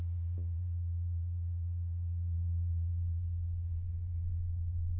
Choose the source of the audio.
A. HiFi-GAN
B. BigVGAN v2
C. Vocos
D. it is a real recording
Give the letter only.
C